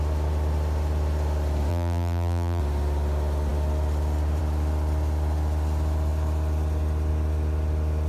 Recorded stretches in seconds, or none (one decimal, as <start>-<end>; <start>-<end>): 0.0-1.7; 2.6-8.1